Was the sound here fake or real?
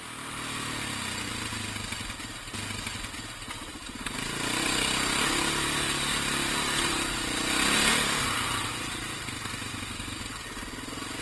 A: real